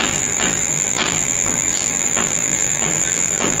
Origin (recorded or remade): remade